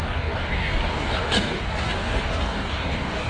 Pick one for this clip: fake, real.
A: fake